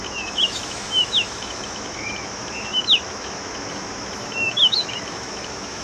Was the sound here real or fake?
fake